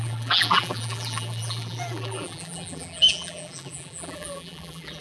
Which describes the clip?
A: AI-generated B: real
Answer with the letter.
A